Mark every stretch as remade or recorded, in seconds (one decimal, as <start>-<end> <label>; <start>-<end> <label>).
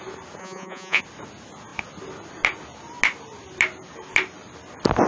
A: 0.0-0.4 recorded; 0.4-1.0 remade; 1.0-5.1 recorded